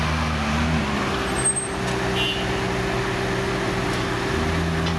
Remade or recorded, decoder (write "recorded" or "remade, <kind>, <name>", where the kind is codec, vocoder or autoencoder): recorded